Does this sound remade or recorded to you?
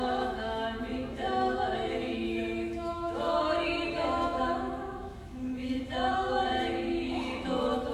remade